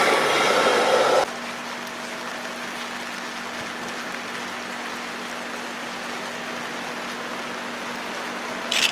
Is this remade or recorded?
recorded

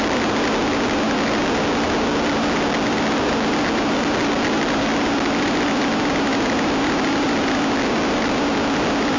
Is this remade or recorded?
recorded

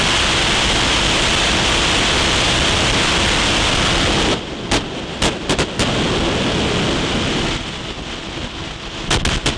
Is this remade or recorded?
recorded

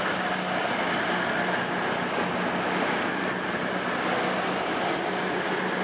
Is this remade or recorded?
recorded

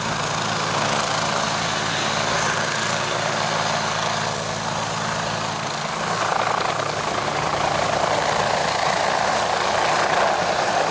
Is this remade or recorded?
recorded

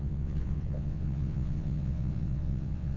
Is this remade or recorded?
remade